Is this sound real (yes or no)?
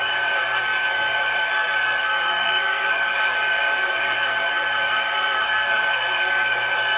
no